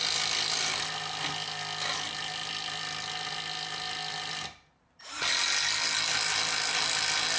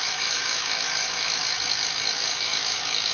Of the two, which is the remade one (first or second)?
second